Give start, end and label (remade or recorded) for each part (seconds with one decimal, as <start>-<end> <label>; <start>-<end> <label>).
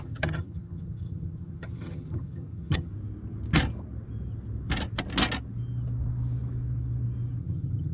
0.0-2.9 remade; 2.9-7.4 recorded; 7.4-7.9 remade